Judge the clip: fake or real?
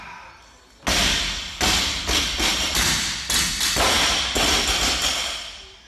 real